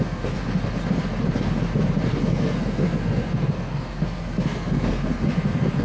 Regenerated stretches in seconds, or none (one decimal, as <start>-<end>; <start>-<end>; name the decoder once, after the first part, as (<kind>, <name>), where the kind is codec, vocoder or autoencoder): 0.0-0.4 (codec, SNAC); 2.2-5.8

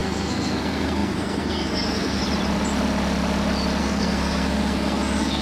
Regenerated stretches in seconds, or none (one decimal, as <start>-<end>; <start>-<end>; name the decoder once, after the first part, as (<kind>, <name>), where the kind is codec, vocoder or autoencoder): 0.0-2.2 (codec, SNAC); 3.8-5.4

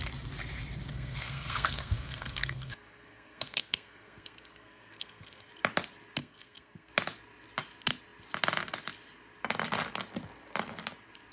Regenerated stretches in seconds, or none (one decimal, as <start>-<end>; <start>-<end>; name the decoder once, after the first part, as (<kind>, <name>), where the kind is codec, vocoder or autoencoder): 0.9-5.5 (codec, SNAC); 6.2-6.9

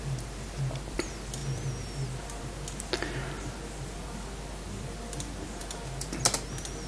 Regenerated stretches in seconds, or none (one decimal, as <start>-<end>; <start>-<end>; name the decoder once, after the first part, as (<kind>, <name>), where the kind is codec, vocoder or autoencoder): none

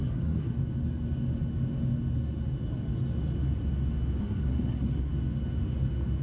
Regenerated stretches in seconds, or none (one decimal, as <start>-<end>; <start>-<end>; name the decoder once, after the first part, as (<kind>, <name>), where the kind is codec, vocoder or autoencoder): 0.0-0.5 (codec, SNAC); 4.2-5.1

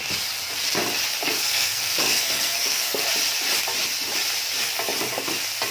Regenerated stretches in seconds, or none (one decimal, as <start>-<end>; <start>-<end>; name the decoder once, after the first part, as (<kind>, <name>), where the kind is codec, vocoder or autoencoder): 1.2-3.1 (codec, SNAC)

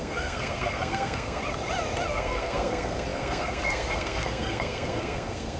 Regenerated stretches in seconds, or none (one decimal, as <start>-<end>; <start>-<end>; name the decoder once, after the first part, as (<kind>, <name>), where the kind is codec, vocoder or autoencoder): 0.0-1.4 (codec, SNAC); 2.1-5.6